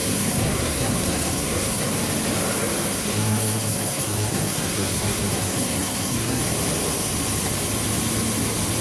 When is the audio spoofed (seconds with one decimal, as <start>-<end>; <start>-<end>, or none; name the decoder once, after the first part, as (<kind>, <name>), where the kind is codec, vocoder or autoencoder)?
0.0-1.9 (codec, SNAC); 3.0-6.4